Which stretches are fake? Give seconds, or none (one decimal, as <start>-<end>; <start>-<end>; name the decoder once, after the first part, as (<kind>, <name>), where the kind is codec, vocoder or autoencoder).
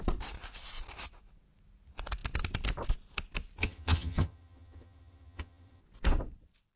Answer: 3.6-5.8 (vocoder, HiFi-GAN)